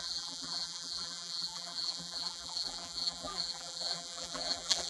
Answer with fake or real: fake